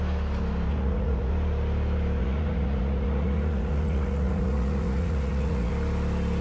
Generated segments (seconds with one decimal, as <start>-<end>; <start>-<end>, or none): 0.7-1.3; 2.2-5.7